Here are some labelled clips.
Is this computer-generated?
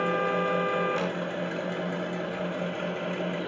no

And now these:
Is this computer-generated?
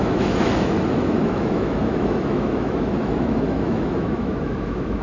yes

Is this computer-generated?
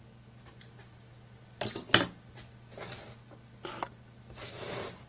no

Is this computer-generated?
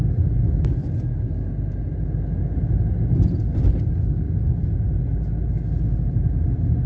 no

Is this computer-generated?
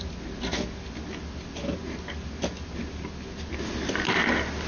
no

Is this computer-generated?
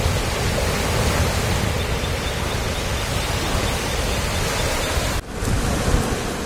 no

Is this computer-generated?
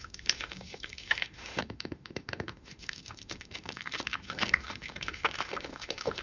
yes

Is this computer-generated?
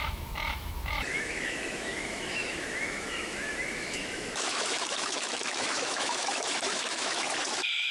yes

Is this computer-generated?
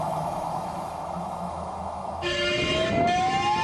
yes